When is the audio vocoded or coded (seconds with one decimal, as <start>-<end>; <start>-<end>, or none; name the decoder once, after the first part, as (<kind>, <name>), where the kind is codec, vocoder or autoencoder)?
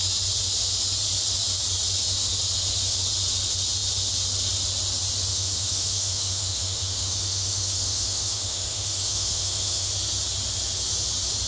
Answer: 5.3-9.9 (autoencoder, DAC-VAE)